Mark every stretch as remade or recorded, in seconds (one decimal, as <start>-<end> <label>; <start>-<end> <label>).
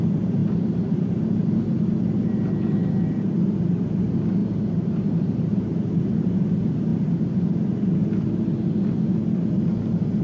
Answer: 0.0-4.4 recorded; 4.4-5.0 remade; 5.0-5.5 recorded; 5.5-6.3 remade; 6.3-10.2 recorded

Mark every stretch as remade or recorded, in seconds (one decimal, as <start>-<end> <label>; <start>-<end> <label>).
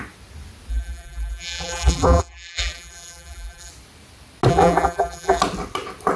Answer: 0.0-0.7 recorded; 0.7-3.7 remade; 3.7-4.5 recorded; 4.5-5.4 remade; 5.4-6.2 recorded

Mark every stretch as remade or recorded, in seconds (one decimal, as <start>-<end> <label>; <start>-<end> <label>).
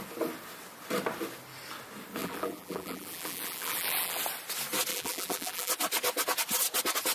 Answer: 0.0-2.2 recorded; 2.2-4.2 remade; 4.2-4.9 recorded; 4.9-5.7 remade; 5.7-7.1 recorded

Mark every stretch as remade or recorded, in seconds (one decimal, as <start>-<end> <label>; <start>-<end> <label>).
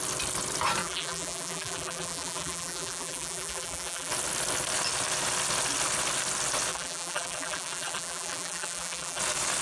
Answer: 0.0-0.8 recorded; 0.8-4.1 remade; 4.1-6.7 recorded; 6.7-9.2 remade; 9.2-9.6 recorded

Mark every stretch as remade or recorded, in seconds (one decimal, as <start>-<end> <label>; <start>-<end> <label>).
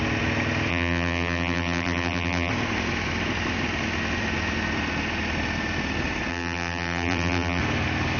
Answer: 0.0-0.7 recorded; 0.7-2.5 remade; 2.5-6.3 recorded; 6.3-7.6 remade; 7.6-8.2 recorded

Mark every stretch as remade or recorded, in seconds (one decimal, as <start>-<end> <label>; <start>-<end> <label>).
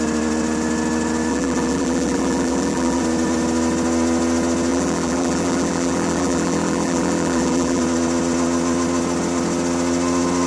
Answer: 0.0-1.3 recorded; 1.3-3.0 remade; 3.0-4.7 recorded; 4.7-7.8 remade; 7.8-10.5 recorded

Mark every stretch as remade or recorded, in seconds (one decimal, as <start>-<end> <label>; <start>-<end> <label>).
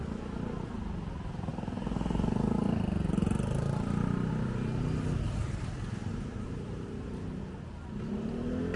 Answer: 0.0-6.0 recorded; 6.0-7.4 remade; 7.4-8.8 recorded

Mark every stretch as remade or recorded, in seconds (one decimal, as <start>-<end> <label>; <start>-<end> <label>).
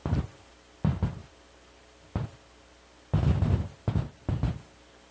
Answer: 0.0-0.5 remade; 0.5-1.2 recorded; 1.2-4.3 remade; 4.3-5.1 recorded